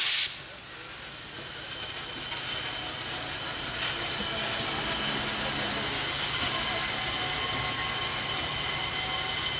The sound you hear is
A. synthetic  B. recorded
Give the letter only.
B